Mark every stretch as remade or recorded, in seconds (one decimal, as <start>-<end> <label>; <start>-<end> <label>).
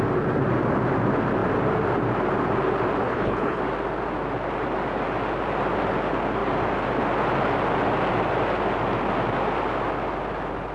0.0-3.0 recorded; 3.0-3.6 remade; 3.6-10.7 recorded